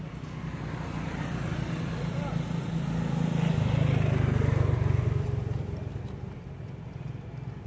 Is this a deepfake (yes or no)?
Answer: no